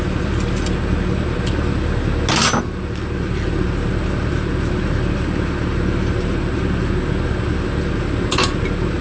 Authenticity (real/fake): real